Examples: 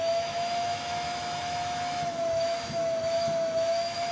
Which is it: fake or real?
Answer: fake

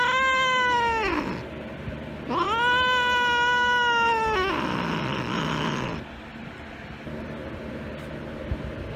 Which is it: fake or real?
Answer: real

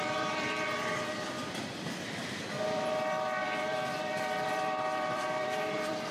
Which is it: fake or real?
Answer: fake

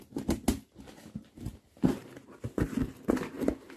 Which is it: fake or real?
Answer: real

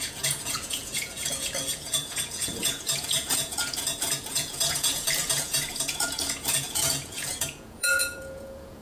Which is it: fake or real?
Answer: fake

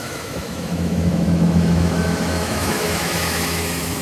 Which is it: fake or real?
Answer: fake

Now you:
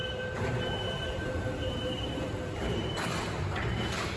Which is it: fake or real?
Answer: fake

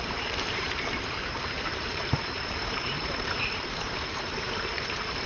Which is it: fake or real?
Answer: fake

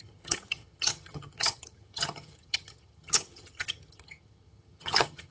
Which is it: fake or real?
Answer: fake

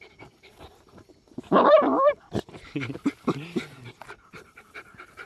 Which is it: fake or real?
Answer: fake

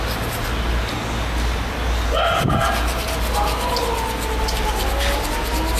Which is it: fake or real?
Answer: real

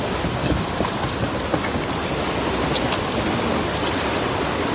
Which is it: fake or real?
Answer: real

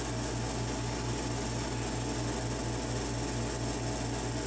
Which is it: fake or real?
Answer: real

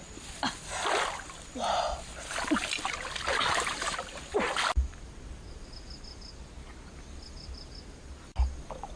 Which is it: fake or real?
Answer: real